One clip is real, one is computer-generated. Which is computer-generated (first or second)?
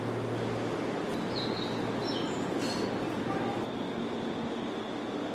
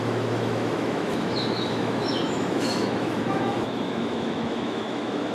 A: second